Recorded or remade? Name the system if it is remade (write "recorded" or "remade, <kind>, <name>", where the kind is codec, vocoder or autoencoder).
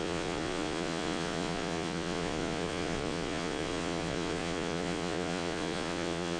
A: remade, vocoder, Vocos